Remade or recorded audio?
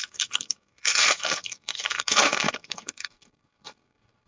remade